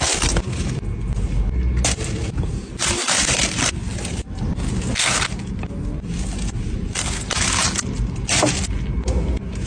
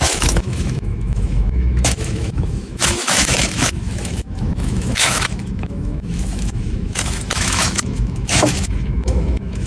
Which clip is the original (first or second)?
first